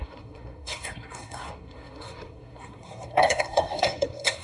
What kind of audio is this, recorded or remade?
remade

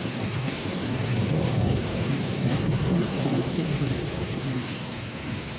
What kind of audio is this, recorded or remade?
remade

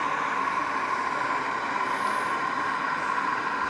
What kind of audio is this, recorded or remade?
recorded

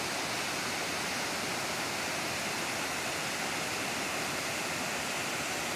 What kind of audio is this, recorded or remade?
recorded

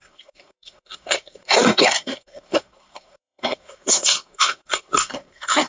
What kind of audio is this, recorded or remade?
remade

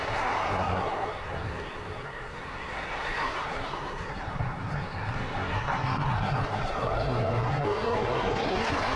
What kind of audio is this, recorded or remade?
remade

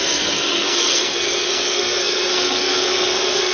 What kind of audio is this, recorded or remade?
remade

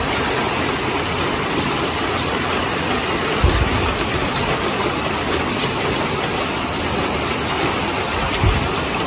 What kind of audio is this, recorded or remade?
recorded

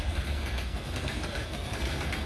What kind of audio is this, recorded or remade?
remade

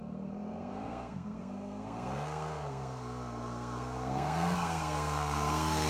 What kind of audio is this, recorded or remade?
remade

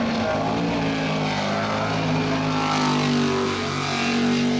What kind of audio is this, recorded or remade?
recorded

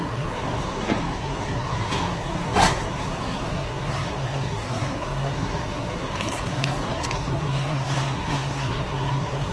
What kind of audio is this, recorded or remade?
remade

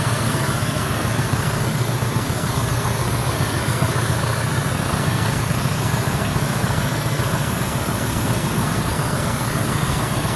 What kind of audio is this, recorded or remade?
remade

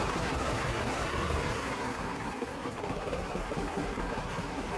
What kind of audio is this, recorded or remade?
remade